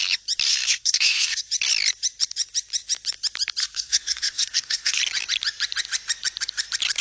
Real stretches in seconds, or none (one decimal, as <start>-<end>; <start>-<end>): 0.0-0.5; 1.4-3.6; 5.0-7.0